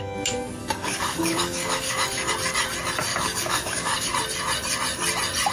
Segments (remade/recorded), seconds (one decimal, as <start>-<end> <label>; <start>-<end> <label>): 0.0-0.6 recorded; 0.6-2.3 remade; 2.3-3.1 recorded; 3.1-4.1 remade; 4.1-5.5 recorded

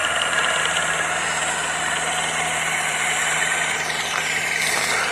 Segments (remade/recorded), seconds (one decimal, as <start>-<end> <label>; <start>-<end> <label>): 0.0-5.1 recorded